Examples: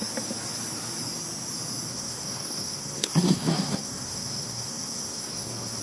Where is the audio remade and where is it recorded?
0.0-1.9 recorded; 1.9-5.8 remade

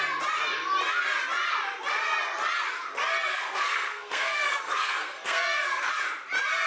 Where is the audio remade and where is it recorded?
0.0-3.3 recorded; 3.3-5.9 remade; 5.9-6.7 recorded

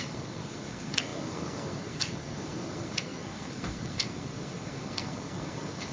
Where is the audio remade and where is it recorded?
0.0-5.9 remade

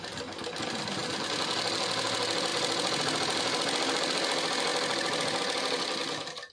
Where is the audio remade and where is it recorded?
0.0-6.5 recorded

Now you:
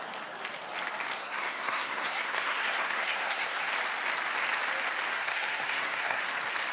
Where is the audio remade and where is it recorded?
0.0-1.2 recorded; 1.2-3.7 remade; 3.7-5.1 recorded; 5.1-6.2 remade; 6.2-6.7 recorded